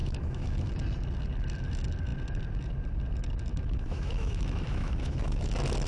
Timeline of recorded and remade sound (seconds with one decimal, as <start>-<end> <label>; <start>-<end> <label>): 0.0-0.7 remade; 0.7-3.5 recorded; 3.5-5.5 remade; 5.5-5.9 recorded